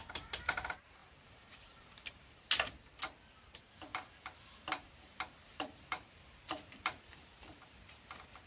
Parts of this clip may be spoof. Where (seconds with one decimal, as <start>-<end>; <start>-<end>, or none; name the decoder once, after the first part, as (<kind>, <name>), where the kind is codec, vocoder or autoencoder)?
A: 1.0-2.4 (vocoder, BigVGAN v2); 3.9-8.0

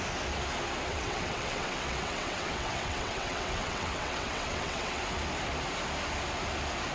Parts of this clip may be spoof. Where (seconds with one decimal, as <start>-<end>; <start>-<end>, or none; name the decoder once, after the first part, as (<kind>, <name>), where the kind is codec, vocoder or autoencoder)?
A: 0.9-5.0 (vocoder, WaveNeXt)

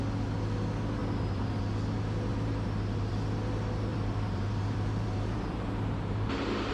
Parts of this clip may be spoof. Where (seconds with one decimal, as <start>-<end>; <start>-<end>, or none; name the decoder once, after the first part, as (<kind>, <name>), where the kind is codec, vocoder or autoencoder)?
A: 1.0-1.6 (vocoder, BigVGAN v2); 2.3-3.1; 3.9-6.7

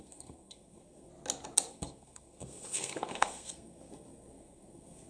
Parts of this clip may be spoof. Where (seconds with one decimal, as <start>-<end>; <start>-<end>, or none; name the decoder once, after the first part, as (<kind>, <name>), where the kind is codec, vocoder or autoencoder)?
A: 0.0-1.1 (codec, SNAC); 1.7-5.1

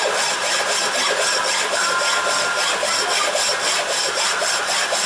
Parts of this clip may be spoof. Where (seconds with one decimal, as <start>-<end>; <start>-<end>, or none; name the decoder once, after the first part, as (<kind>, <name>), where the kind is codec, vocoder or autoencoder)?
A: 0.0-0.4 (vocoder, BigVGAN v2); 3.5-5.1

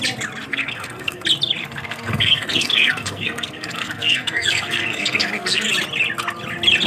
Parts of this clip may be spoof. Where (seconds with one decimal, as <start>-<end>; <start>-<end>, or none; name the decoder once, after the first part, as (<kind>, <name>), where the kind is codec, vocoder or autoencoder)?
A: 0.5-1.2 (codec, SNAC); 1.6-5.7

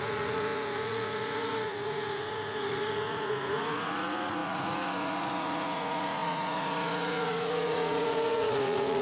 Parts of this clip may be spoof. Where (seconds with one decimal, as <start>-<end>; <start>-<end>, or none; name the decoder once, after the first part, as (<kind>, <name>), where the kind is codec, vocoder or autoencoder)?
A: 0.0-9.0 (vocoder, Vocos)